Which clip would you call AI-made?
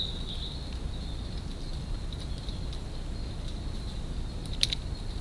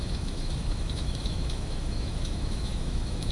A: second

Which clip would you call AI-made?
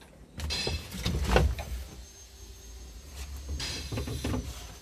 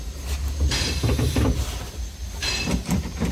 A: second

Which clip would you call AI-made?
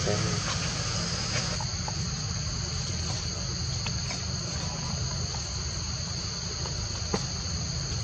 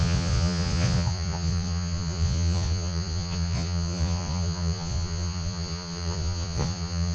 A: second